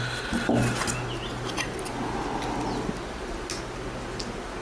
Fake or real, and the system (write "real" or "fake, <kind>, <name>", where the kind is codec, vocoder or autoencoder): real